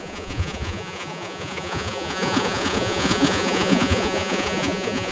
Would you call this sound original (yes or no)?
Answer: no